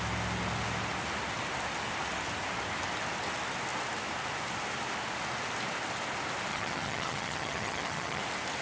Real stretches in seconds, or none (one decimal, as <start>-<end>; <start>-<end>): 0.0-6.5; 8.2-8.6